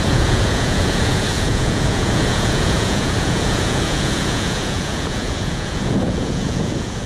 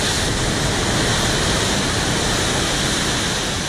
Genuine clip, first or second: second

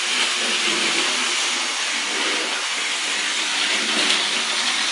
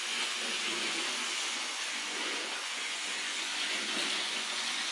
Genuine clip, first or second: first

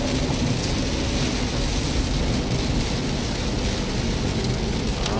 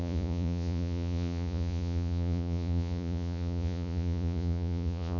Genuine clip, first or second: first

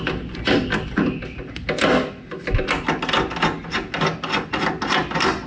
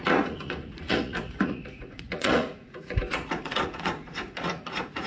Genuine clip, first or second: first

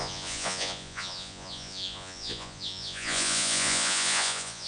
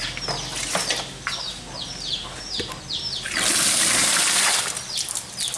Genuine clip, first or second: second